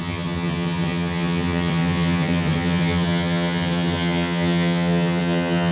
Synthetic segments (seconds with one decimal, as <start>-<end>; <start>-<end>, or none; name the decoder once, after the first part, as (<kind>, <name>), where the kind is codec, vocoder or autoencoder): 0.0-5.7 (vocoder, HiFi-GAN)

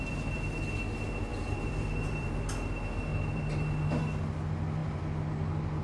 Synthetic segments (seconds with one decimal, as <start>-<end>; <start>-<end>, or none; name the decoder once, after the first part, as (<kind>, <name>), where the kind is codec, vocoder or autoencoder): 1.3-2.5 (vocoder, BigVGAN v2); 3.1-4.0

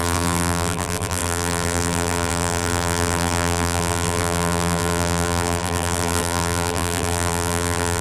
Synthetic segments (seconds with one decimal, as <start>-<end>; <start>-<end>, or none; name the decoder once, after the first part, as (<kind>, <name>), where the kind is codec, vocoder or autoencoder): 0.0-8.0 (vocoder, BigVGAN v2)